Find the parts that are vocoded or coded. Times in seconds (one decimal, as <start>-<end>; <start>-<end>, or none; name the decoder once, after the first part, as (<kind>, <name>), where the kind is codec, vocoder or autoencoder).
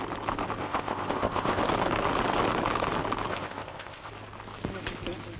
0.6-1.6 (codec, ZipCodec); 3.3-4.1